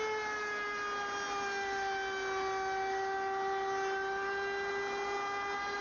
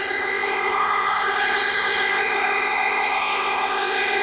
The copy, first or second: second